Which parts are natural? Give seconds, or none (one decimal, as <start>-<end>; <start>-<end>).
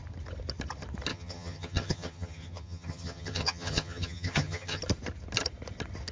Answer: 0.0-1.1; 4.8-6.1